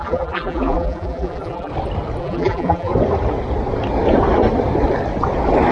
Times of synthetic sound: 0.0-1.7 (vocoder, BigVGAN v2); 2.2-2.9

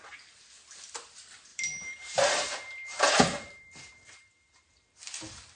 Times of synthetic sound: 1.5-4.9 (vocoder, BigVGAN v2)

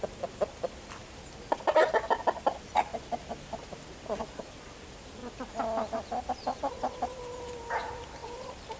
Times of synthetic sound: 8.2-8.8 (vocoder, BigVGAN v2)

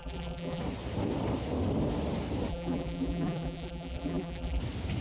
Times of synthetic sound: 0.0-0.6 (vocoder, BigVGAN v2); 2.5-4.6

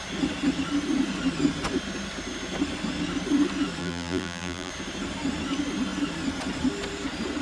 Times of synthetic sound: 3.8-4.7 (vocoder, BigVGAN v2)

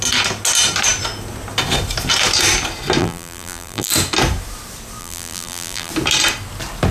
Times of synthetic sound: 3.0-3.9 (vocoder, BigVGAN v2); 5.0-5.9

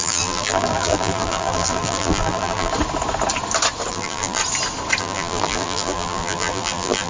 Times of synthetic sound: 0.0-2.7 (vocoder, BigVGAN v2); 3.9-4.4; 5.0-7.1

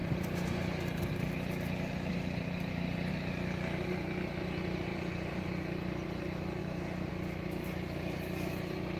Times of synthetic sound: 0.0-1.0 (vocoder, BigVGAN v2); 2.1-3.1; 4.9-5.5; 6.6-7.1